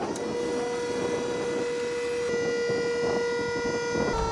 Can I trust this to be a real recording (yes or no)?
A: yes